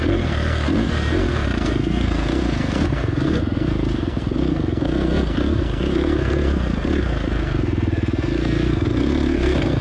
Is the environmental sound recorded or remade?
remade